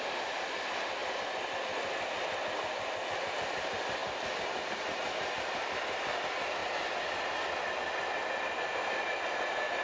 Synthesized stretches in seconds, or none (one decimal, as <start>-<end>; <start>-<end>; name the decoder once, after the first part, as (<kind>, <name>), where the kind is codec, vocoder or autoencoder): 0.0-1.0 (vocoder, BigVGAN v2); 3.3-6.6; 8.4-9.8